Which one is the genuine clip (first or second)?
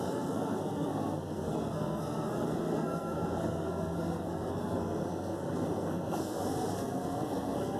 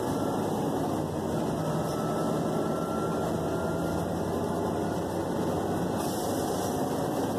second